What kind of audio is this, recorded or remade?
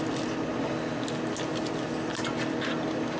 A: recorded